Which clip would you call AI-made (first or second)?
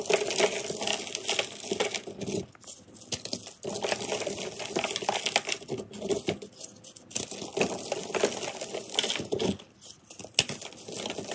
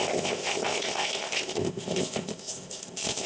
second